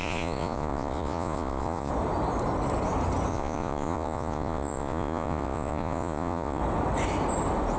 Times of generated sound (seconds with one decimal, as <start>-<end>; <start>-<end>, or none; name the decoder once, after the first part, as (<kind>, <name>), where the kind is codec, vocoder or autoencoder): 0.0-1.9 (vocoder, Vocos); 3.3-6.6